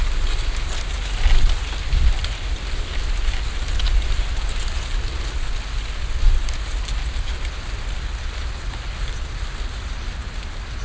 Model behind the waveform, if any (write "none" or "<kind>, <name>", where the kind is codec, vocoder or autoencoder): none